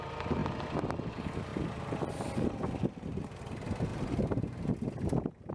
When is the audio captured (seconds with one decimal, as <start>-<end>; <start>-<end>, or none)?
0.0-3.9; 4.7-5.5